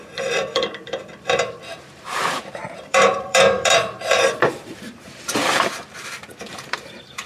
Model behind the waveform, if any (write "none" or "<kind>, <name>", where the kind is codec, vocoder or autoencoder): vocoder, BigVGAN v2